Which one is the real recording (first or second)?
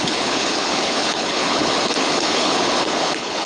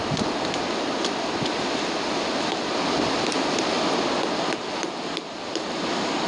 second